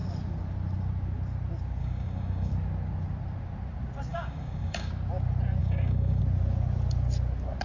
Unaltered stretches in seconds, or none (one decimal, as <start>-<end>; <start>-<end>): 0.0-1.8; 2.5-4.1; 4.9-5.6; 6.2-7.6